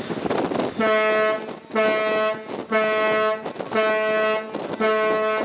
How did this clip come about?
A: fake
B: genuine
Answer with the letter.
B